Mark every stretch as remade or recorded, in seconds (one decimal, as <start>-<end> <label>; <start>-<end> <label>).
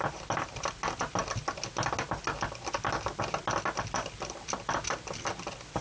0.0-5.8 recorded